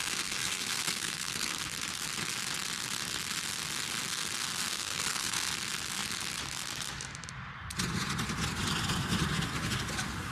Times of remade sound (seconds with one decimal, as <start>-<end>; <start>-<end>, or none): 0.0-1.6; 4.6-5.5